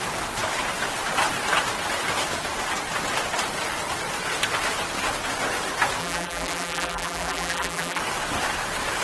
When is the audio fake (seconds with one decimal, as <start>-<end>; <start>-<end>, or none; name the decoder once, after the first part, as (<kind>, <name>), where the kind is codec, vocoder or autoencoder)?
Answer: 6.0-8.0 (vocoder, BigVGAN v2)